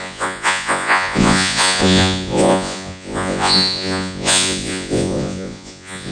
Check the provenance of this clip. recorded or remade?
remade